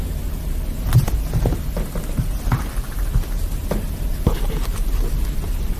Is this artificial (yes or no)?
yes